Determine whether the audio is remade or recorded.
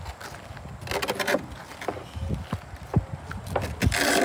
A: recorded